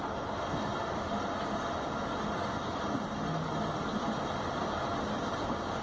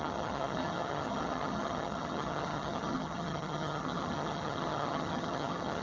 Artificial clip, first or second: second